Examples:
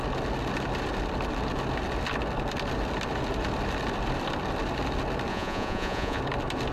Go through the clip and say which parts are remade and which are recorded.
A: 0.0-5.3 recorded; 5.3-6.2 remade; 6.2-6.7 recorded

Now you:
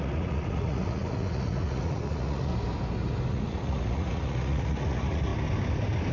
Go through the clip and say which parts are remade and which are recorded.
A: 0.0-2.5 remade; 2.5-3.3 recorded; 3.3-5.3 remade; 5.3-6.1 recorded

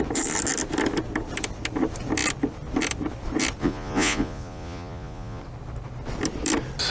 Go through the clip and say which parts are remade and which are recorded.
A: 0.0-3.6 recorded; 3.6-5.4 remade; 5.4-6.9 recorded

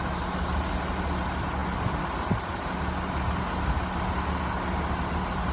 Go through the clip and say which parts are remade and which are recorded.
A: 0.0-5.5 recorded

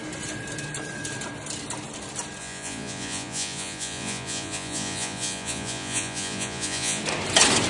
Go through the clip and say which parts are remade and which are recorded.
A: 0.0-2.4 recorded; 2.4-7.0 remade; 7.0-7.7 recorded

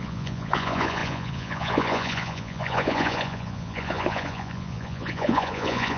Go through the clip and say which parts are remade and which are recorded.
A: 0.0-6.0 remade

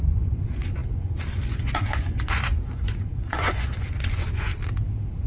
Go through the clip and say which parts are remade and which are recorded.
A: 0.0-4.5 remade; 4.5-5.3 recorded

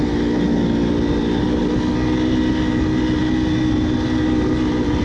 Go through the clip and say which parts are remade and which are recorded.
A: 0.0-5.0 recorded